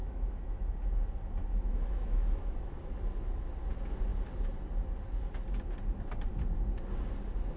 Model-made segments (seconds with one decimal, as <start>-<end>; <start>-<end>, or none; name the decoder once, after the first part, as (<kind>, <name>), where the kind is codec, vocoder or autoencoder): 0.0-0.7 (autoencoder, DAC-VAE); 1.4-2.9